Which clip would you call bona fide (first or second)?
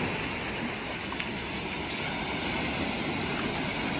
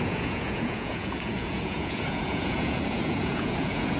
first